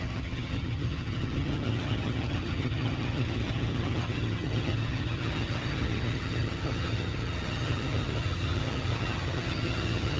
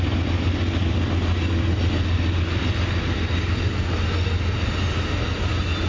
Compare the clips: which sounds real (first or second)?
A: second